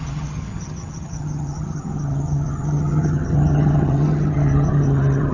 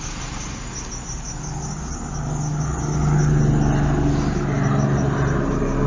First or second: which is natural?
second